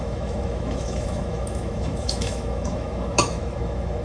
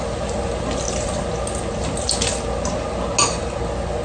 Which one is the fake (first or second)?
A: first